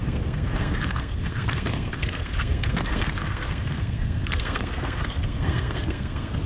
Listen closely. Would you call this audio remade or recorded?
remade